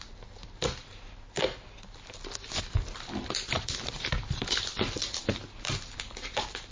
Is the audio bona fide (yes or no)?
yes